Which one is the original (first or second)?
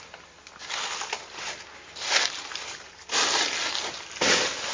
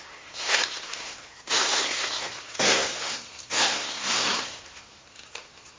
first